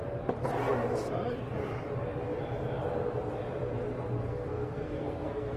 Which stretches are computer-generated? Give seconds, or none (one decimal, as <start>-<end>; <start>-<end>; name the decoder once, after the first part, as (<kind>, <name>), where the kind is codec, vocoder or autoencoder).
4.2-5.6 (codec, SNAC)